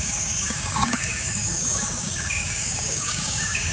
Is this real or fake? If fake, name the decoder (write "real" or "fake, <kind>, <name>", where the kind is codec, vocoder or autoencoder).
fake, codec, DAC